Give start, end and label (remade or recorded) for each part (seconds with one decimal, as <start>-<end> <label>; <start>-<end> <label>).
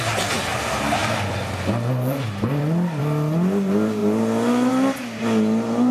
0.0-5.9 recorded